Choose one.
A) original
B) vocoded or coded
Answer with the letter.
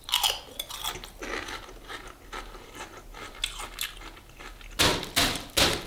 A